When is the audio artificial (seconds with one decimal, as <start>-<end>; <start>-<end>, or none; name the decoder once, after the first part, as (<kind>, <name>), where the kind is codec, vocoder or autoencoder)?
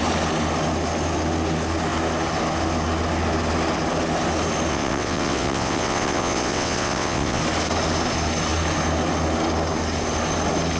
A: 4.7-7.4 (vocoder, WaveNeXt)